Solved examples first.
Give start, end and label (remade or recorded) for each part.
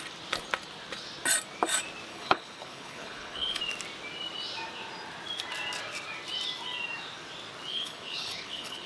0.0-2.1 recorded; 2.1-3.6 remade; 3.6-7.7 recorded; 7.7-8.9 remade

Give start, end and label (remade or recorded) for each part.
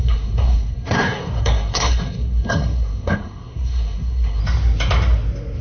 0.0-4.4 remade; 4.4-5.6 recorded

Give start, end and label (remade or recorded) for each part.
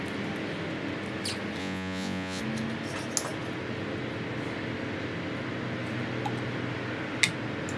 0.0-1.6 recorded; 1.6-2.4 remade; 2.4-7.8 recorded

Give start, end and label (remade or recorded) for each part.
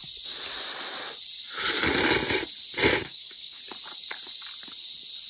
0.0-2.9 recorded; 2.9-3.6 remade; 3.6-5.3 recorded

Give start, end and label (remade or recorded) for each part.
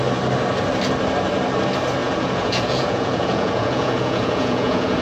0.0-2.0 recorded; 2.0-5.0 remade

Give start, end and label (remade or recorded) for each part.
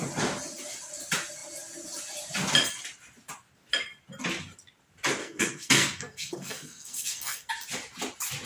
0.0-5.2 recorded; 5.2-7.5 remade; 7.5-8.5 recorded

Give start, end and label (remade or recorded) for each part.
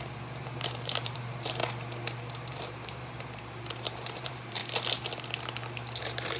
0.0-1.6 remade; 1.6-2.5 recorded; 2.5-4.6 remade; 4.6-6.0 recorded; 6.0-6.4 remade